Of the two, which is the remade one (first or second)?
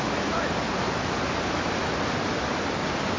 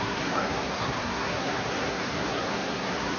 second